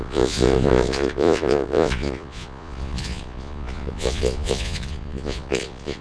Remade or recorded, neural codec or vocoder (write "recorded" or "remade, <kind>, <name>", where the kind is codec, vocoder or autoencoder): remade, vocoder, Vocos